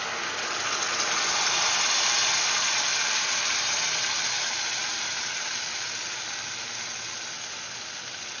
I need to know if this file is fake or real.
real